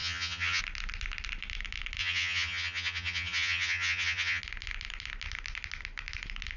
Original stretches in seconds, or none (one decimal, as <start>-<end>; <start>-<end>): 0.6-2.0; 4.4-6.6